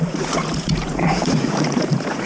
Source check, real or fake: fake